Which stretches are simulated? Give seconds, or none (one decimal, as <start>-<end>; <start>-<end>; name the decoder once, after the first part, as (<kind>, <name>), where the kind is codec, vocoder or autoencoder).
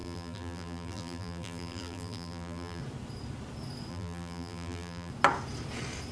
0.0-2.8 (vocoder, BigVGAN v2); 3.9-5.1